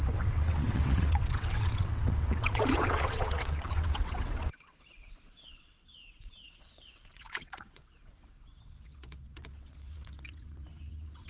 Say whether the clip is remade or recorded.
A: remade